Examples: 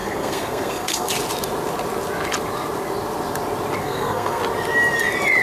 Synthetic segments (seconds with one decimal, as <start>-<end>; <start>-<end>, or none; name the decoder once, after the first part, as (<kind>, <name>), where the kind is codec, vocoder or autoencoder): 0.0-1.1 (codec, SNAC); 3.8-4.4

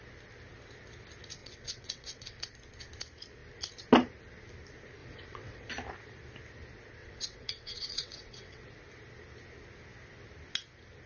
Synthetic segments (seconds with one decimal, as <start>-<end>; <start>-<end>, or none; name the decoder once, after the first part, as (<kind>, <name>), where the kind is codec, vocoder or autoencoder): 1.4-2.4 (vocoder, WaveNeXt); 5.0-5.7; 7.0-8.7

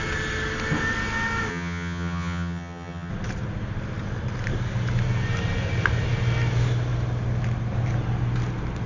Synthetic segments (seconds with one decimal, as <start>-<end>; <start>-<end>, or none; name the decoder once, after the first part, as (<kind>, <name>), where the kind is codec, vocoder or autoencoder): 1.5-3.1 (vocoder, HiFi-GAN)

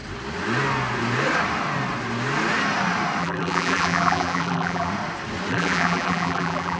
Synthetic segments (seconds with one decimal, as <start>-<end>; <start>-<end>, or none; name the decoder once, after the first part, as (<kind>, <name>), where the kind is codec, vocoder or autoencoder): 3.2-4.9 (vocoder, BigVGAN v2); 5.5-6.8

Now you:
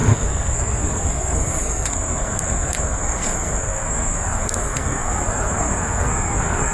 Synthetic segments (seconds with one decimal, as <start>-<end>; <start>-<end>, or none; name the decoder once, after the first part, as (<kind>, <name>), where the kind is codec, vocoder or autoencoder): 0.0-6.7 (codec, SNAC)